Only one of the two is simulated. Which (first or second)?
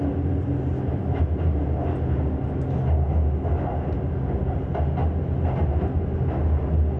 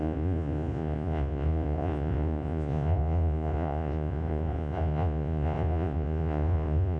second